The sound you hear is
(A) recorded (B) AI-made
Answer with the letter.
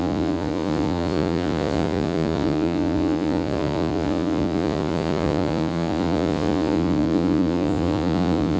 B